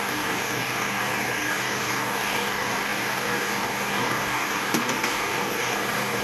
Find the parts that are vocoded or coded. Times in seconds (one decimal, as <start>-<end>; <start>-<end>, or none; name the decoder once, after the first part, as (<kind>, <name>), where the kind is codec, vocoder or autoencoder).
0.0-6.2 (codec, DAC)